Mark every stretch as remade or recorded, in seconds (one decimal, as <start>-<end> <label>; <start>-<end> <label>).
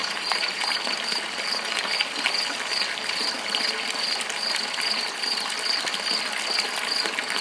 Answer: 0.0-0.8 remade; 0.8-7.4 recorded